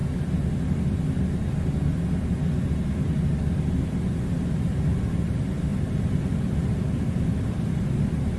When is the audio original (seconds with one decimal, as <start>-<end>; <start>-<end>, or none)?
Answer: 0.0-5.7

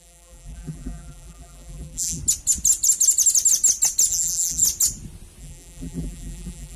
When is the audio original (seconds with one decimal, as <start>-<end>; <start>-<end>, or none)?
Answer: 2.2-4.1; 4.6-5.4

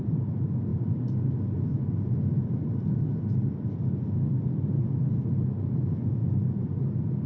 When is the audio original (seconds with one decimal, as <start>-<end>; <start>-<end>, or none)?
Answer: 0.0-7.3

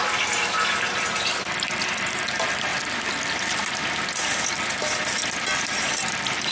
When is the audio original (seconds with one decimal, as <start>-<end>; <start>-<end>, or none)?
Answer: 0.0-6.5

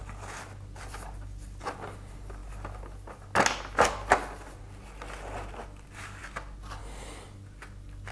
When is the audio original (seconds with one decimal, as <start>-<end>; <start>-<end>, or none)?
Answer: 0.0-8.1